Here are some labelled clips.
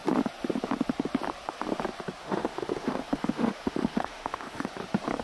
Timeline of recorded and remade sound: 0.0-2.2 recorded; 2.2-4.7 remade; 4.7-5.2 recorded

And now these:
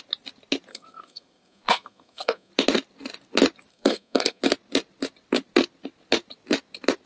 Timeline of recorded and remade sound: 0.0-0.7 recorded; 0.7-2.5 remade; 2.5-3.7 recorded; 3.7-4.4 remade; 4.4-7.1 recorded

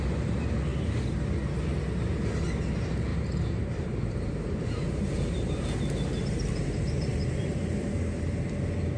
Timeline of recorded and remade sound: 0.0-3.1 recorded; 3.1-8.0 remade; 8.0-9.0 recorded

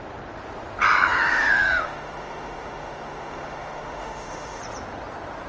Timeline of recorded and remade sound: 0.0-1.3 recorded; 1.3-4.6 remade; 4.6-5.5 recorded

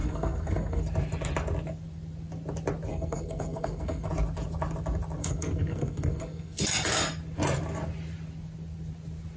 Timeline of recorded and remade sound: 0.0-0.8 remade; 0.8-2.9 recorded; 2.9-4.1 remade; 4.1-5.2 recorded; 5.2-6.6 remade; 6.6-9.4 recorded

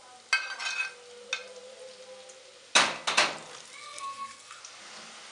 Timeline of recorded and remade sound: 0.0-3.8 recorded; 3.8-4.6 remade; 4.6-5.3 recorded

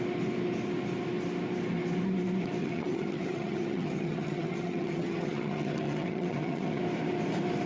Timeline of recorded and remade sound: 0.0-2.6 recorded; 2.6-6.8 remade; 6.8-7.7 recorded